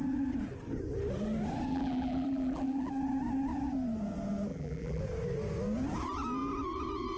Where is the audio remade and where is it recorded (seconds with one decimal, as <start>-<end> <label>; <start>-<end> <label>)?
0.0-1.7 recorded; 1.7-2.9 remade; 2.9-4.5 recorded; 4.5-5.0 remade; 5.0-7.2 recorded